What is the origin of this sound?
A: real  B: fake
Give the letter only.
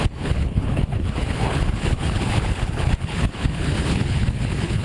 B